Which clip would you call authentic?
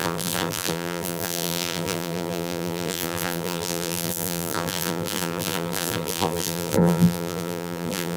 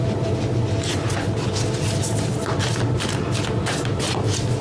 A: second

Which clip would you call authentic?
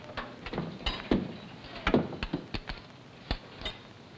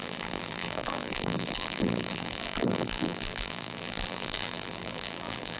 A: first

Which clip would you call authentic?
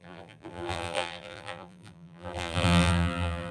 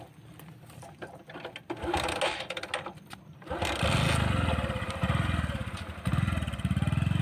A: second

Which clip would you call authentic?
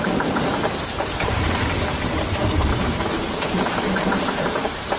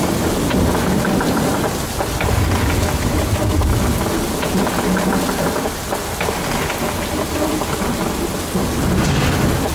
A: second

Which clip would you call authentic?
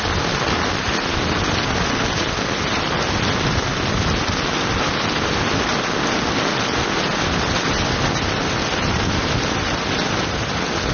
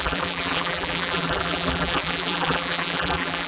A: first